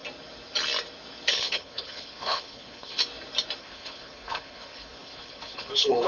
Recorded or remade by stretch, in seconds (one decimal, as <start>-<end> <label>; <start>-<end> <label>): 0.0-1.3 recorded; 1.3-3.0 remade; 3.0-3.6 recorded; 3.6-6.1 remade